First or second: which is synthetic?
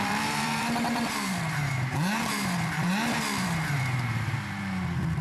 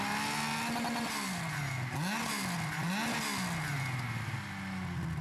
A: first